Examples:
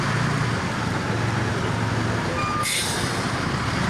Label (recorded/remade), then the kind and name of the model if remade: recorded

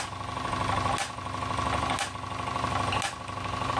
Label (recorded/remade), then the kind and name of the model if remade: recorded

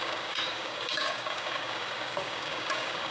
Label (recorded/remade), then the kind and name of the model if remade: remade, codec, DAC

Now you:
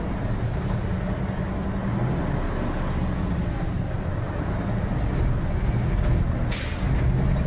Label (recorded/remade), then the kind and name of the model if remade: recorded